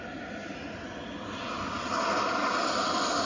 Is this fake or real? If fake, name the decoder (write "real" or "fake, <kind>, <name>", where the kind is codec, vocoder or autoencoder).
real